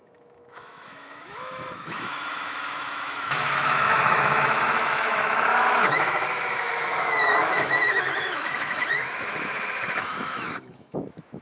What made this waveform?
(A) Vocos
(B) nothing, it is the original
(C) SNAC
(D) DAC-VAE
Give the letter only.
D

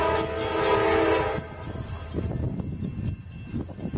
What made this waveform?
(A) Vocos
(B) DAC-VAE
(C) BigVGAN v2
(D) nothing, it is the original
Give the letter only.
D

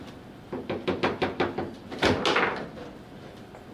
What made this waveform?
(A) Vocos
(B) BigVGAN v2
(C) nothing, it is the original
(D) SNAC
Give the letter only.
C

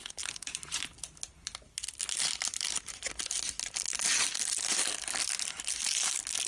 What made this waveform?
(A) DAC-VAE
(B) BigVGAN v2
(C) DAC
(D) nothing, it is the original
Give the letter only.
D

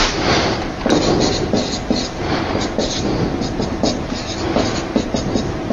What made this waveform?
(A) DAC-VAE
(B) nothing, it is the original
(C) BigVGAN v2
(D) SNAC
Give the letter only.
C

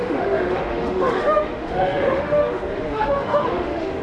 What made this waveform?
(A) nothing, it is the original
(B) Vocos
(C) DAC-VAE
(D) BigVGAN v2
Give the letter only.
C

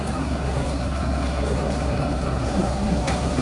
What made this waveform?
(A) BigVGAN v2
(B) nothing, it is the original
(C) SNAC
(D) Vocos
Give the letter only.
C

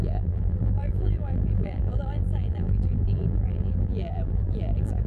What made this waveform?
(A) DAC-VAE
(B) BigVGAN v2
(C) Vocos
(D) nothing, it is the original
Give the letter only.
B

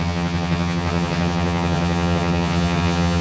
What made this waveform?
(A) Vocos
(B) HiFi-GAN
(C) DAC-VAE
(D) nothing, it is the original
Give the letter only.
B